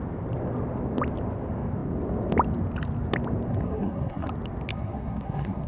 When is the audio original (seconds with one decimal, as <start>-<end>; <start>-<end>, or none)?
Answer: 0.0-3.5; 4.3-4.7